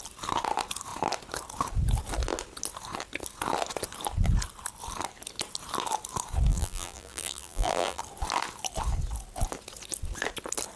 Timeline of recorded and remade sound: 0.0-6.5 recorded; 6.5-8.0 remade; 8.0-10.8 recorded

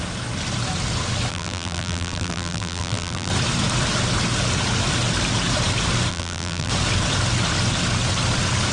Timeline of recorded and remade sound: 0.0-1.3 recorded; 1.3-3.3 remade; 3.3-6.1 recorded; 6.1-6.7 remade; 6.7-8.7 recorded

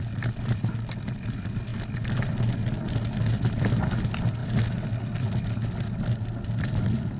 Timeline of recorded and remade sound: 0.0-1.7 remade; 1.7-4.0 recorded; 4.0-4.4 remade; 4.4-6.6 recorded; 6.6-7.2 remade

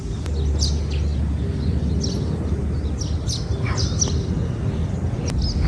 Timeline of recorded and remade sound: 0.0-5.7 recorded

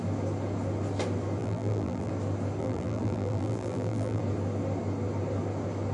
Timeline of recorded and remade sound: 0.0-1.4 recorded; 1.4-2.1 remade; 2.1-2.6 recorded; 2.6-4.2 remade; 4.2-5.9 recorded

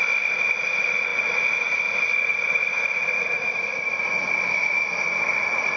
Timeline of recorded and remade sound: 0.0-1.1 remade; 1.1-2.4 recorded; 2.4-3.7 remade; 3.7-5.8 recorded